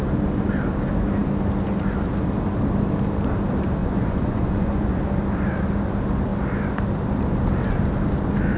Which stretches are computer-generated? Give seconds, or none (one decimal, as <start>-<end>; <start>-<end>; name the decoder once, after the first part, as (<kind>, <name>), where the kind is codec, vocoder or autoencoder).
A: 3.8-5.0 (vocoder, Vocos)